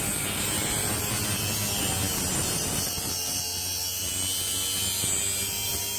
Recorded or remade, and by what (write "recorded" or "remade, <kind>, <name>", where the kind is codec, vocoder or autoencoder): recorded